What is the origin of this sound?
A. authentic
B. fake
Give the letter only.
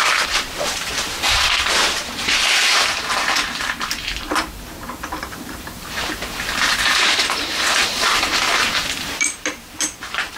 B